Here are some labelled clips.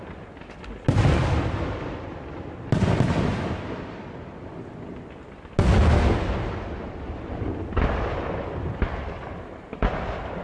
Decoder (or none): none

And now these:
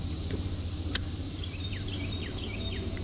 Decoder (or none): vocoder, BigVGAN v2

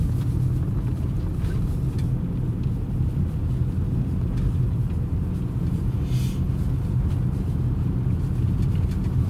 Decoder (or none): none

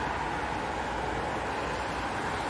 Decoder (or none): none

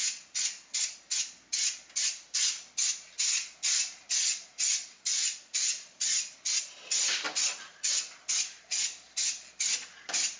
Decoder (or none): none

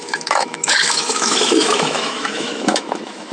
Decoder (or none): autoencoder, DAC-VAE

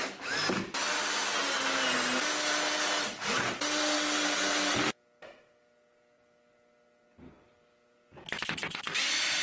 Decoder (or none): none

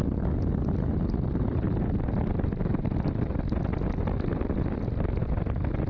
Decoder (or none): none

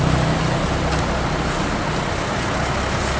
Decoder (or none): none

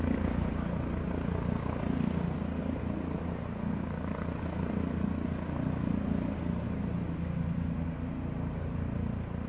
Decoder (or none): none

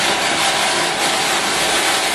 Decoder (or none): none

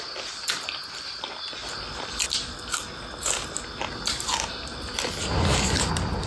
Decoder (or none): none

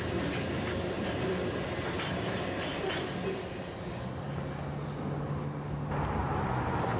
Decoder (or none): none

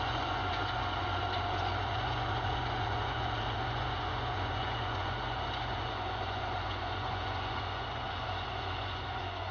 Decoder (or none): vocoder, Vocos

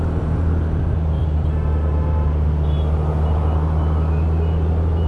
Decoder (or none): none